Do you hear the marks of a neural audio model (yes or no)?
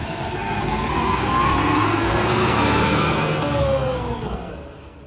yes